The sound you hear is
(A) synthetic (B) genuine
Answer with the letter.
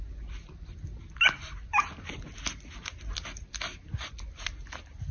B